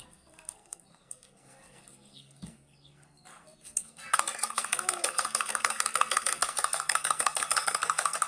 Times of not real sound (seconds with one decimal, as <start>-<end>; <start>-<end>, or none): 0.0-8.3